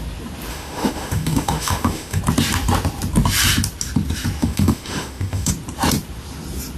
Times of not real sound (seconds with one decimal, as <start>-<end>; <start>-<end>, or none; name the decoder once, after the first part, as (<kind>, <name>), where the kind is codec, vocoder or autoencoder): 0.5-2.2 (autoencoder, DAC-VAE); 4.4-5.5